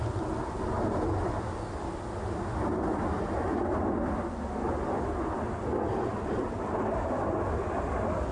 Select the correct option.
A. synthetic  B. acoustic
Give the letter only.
B